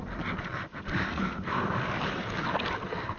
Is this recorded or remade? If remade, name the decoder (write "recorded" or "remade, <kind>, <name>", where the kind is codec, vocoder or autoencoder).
recorded